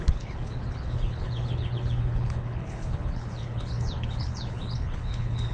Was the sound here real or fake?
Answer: fake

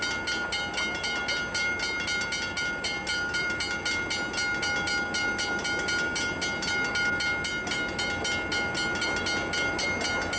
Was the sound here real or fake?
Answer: real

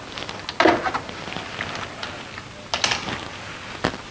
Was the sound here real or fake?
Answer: real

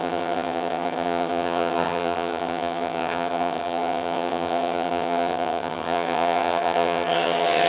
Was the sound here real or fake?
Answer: fake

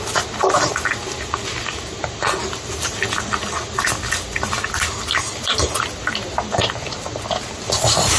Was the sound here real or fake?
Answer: real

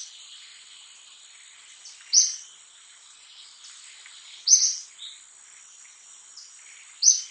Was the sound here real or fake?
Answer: real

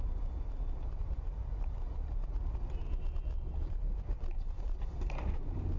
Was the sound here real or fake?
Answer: fake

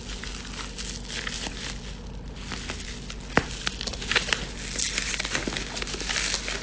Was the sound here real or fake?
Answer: real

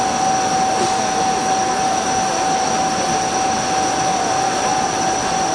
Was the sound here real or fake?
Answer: real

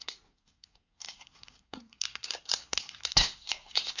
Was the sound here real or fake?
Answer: fake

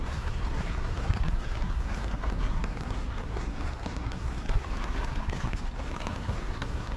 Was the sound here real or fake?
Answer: fake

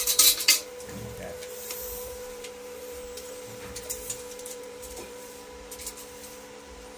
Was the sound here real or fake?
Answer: fake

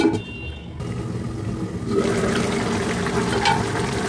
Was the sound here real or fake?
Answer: real